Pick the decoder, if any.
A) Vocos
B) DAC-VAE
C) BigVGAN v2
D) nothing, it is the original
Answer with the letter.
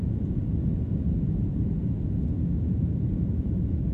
A